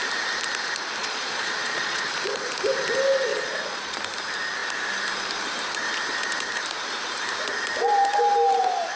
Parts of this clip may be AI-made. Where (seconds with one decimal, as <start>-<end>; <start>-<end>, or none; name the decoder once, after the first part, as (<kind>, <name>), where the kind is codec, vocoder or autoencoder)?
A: 1.0-2.0 (vocoder, Vocos); 3.3-4.0